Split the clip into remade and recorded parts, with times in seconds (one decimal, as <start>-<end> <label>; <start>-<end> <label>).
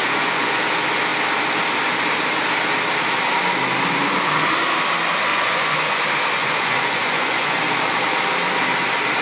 0.0-0.6 remade; 0.6-5.3 recorded; 5.3-6.0 remade; 6.0-6.4 recorded; 6.4-7.6 remade; 7.6-9.2 recorded